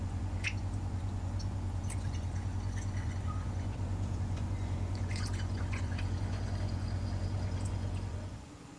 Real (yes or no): no